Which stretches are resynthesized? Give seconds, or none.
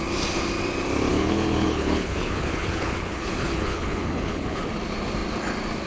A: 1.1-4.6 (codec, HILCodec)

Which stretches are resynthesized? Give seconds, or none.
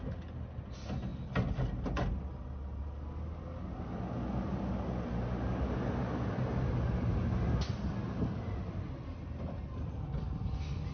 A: none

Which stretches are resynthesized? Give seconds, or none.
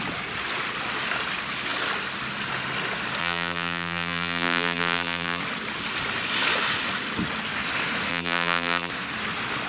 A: 3.2-5.4 (vocoder, BigVGAN v2); 8.1-8.9